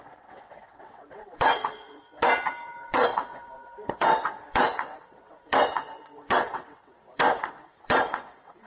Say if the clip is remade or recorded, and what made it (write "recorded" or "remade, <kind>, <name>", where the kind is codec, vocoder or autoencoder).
remade, vocoder, WaveNeXt